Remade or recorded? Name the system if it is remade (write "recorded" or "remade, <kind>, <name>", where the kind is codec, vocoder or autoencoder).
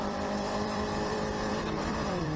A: remade, vocoder, BigVGAN v2